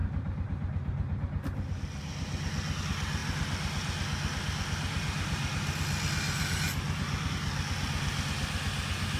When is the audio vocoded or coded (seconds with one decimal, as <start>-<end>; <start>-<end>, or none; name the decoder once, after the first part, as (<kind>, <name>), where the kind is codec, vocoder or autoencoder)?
none